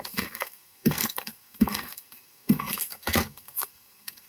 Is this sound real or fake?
fake